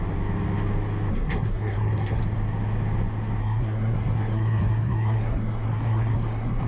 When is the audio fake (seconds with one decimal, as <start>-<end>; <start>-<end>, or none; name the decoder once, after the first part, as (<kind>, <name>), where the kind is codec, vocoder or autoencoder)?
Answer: 1.1-2.2 (codec, SNAC); 3.4-6.7